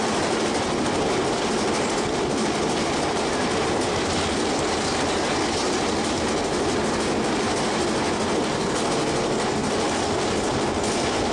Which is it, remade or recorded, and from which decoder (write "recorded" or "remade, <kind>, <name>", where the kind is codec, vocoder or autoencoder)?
recorded